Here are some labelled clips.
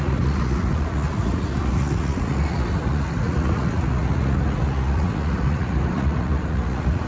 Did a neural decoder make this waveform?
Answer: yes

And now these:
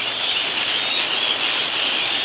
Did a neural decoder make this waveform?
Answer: no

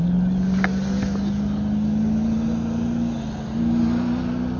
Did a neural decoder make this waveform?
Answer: no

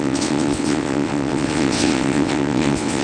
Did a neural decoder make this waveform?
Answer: yes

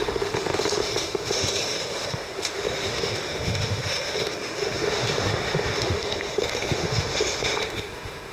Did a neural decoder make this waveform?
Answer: yes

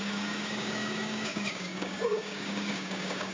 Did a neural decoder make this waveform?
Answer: yes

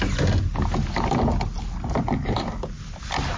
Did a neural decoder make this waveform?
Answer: no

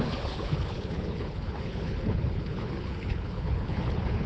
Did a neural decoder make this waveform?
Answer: yes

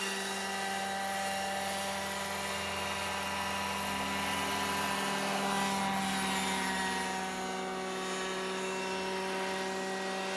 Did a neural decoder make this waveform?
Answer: no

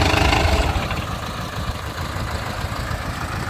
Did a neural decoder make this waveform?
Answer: yes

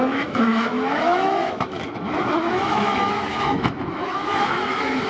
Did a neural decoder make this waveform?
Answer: yes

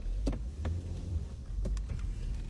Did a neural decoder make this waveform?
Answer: yes